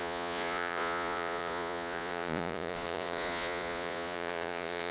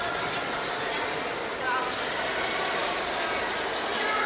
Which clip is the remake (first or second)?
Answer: first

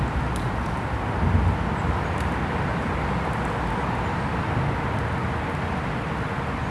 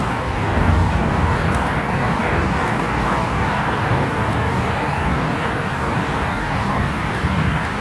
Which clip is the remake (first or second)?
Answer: second